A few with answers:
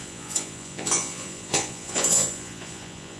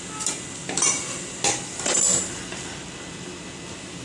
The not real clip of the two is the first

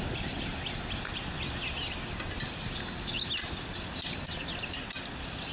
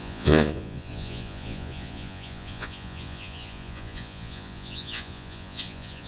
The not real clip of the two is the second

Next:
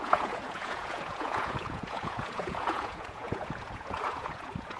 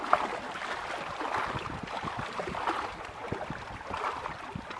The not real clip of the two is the first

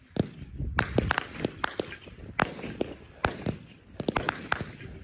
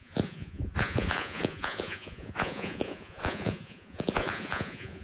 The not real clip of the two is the second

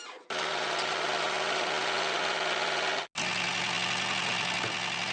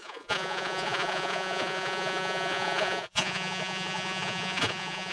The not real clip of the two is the second